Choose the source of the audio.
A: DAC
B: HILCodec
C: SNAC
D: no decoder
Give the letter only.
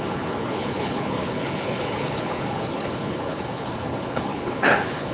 B